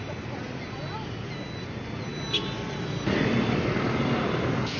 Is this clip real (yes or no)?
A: yes